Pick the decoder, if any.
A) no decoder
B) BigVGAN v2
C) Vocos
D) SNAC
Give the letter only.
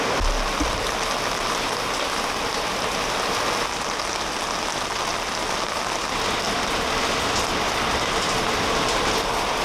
A